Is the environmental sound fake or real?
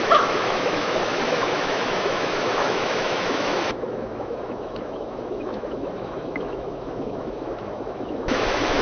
fake